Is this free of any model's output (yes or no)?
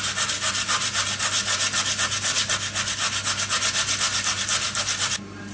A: yes